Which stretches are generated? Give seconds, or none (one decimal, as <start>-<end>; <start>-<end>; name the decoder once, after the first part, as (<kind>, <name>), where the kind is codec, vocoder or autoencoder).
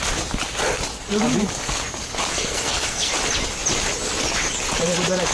2.3-3.1 (codec, SNAC)